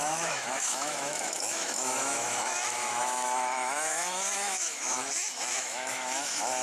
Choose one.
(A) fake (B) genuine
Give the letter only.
A